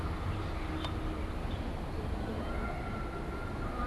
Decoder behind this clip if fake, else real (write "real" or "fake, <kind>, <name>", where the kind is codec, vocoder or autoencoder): real